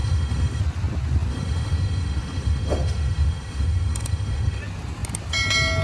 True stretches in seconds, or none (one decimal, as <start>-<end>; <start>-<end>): 0.6-1.3; 4.6-5.8